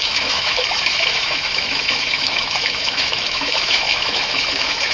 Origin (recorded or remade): remade